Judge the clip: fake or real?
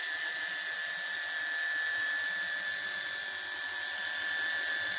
real